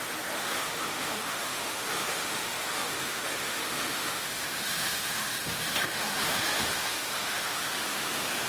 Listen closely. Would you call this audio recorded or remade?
remade